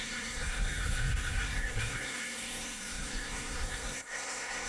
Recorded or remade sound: remade